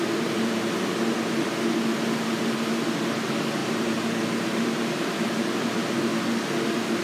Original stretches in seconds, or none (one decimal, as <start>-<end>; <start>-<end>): 0.0-3.6; 6.0-7.0